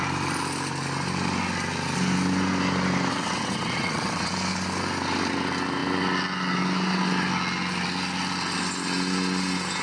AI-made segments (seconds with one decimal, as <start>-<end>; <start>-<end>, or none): 3.1-4.3